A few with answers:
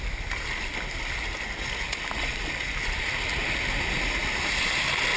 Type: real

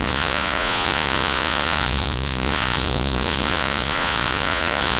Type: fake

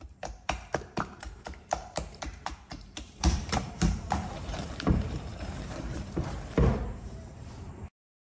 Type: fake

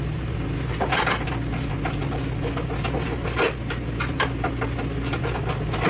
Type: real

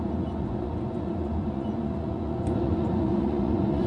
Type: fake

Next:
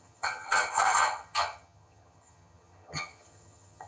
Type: fake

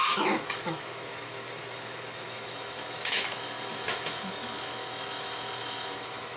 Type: fake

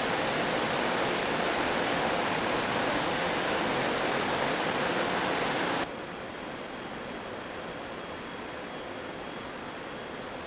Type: real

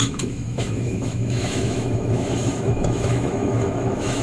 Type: fake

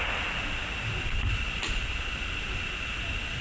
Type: real